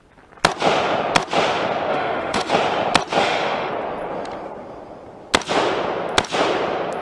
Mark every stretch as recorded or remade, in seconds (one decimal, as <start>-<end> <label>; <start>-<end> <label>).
0.0-1.9 recorded; 1.9-2.5 remade; 2.5-3.2 recorded; 3.2-3.7 remade; 3.7-7.0 recorded